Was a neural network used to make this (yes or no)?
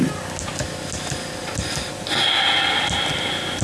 no